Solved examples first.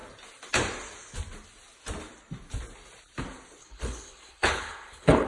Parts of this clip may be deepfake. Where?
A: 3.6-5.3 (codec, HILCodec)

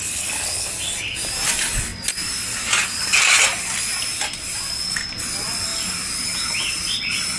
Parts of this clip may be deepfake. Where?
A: 0.0-0.7 (codec, HILCodec)

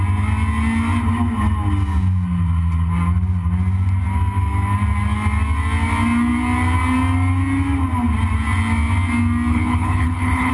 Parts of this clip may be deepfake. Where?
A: 9.5-10.5 (codec, HILCodec)

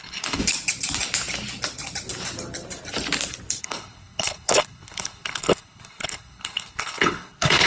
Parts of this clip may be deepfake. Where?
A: 0.0-0.4 (codec, HILCodec); 3.6-7.7

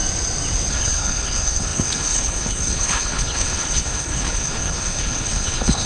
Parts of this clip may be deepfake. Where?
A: 0.7-5.9 (codec, HILCodec)

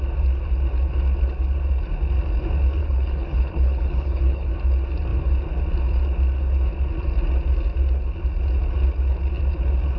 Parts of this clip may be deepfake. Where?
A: 2.8-4.5 (codec, HILCodec)

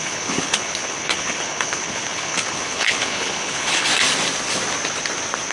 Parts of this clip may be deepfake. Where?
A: 0.0-3.9 (codec, HILCodec)

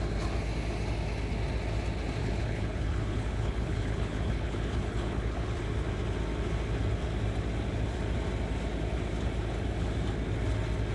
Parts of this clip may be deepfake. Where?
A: 2.2-5.6 (codec, HILCodec)